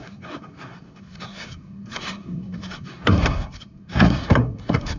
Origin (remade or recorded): remade